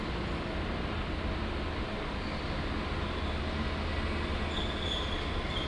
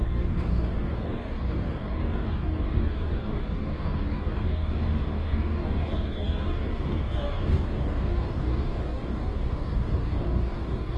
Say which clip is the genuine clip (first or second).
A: first